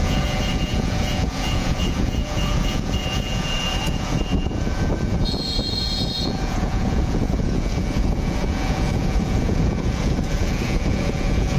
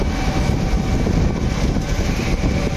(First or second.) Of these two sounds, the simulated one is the first